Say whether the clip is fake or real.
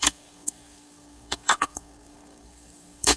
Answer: fake